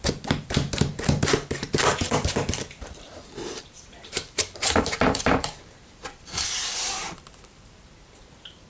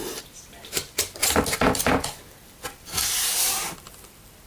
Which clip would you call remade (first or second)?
first